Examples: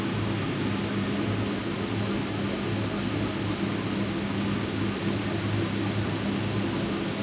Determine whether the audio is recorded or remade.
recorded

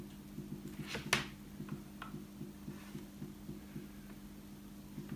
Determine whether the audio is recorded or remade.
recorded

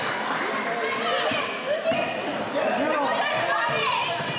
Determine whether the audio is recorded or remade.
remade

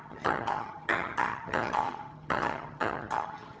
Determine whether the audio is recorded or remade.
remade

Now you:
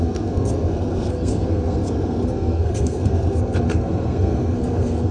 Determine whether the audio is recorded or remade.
remade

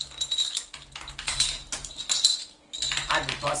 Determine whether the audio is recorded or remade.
recorded